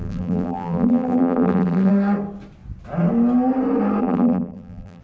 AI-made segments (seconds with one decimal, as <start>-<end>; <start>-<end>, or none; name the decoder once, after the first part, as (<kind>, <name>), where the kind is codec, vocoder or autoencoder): 0.0-1.9 (vocoder, BigVGAN v2); 4.0-5.0